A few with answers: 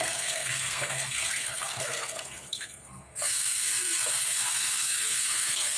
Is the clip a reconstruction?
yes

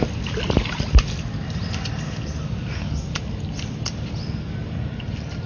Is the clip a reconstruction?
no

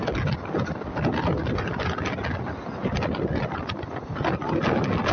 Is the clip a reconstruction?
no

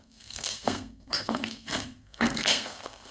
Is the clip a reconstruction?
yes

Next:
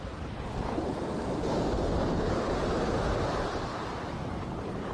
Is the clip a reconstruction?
no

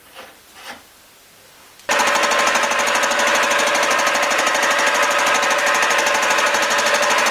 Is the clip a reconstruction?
no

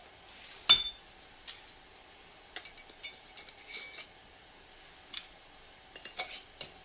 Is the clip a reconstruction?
no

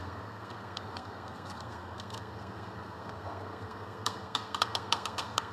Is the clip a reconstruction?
yes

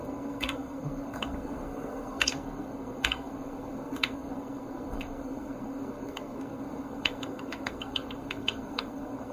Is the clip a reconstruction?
yes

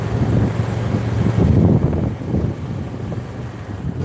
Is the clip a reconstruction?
no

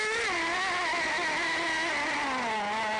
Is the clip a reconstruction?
no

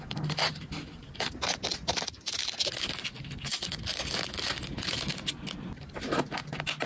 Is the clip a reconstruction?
no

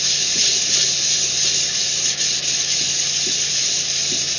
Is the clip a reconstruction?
no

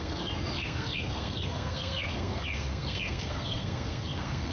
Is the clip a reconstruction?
yes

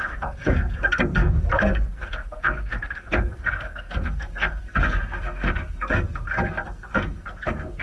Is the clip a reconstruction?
yes